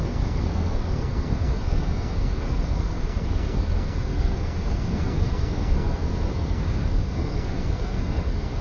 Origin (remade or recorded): remade